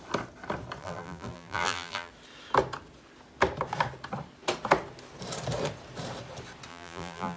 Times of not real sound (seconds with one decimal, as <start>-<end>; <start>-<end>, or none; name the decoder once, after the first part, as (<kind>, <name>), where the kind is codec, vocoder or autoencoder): 0.8-2.1 (vocoder, BigVGAN v2); 6.7-7.4

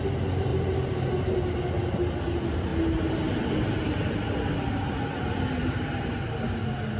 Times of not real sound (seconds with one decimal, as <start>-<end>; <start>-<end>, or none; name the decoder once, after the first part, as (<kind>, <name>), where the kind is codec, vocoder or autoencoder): none